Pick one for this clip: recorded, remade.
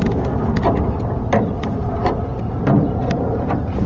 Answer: recorded